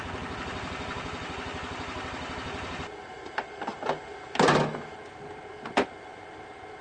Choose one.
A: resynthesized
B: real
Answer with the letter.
B